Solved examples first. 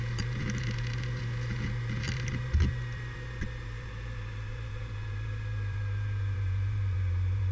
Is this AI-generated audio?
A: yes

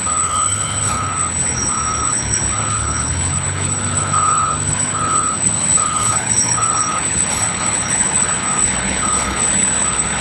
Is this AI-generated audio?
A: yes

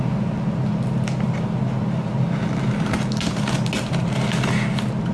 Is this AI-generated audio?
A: no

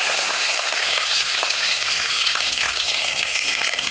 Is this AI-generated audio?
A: yes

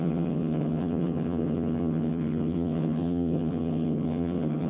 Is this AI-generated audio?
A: yes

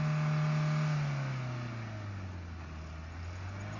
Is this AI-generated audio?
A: no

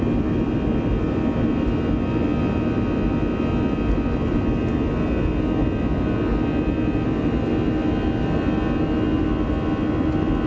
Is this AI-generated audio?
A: no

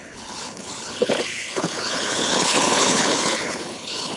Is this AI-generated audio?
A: yes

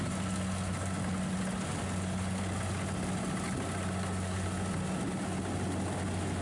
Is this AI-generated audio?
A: no